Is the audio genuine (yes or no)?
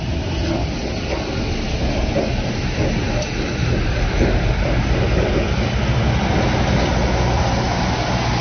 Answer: yes